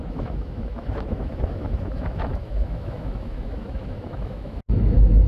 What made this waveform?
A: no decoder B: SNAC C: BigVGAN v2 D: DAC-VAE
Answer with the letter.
D